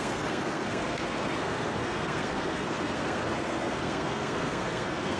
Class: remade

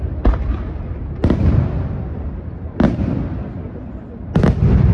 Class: recorded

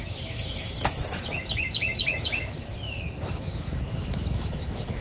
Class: remade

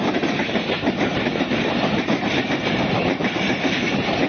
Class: remade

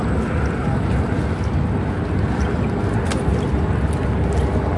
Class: recorded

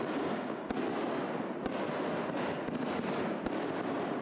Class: recorded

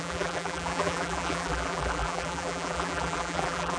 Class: remade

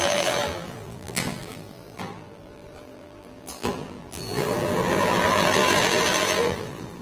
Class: remade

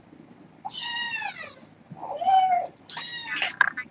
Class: recorded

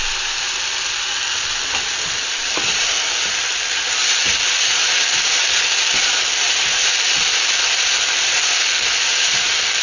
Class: recorded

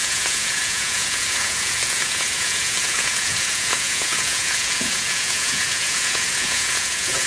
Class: remade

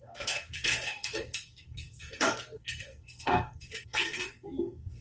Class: remade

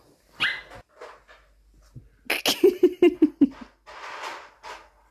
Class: recorded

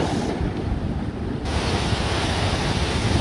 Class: recorded